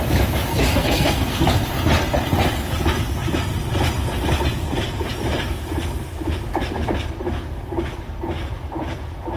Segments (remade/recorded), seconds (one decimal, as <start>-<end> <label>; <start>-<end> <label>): 0.0-0.5 recorded; 0.5-1.4 remade; 1.4-9.4 recorded